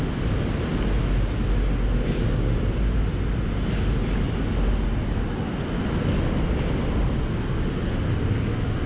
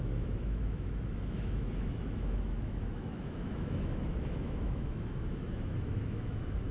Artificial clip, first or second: second